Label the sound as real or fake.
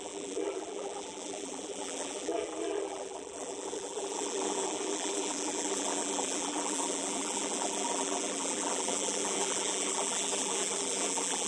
fake